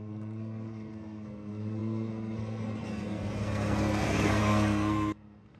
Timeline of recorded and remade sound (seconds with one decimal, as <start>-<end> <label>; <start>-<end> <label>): 0.0-5.6 remade